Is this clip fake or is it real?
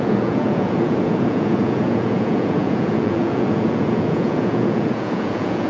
fake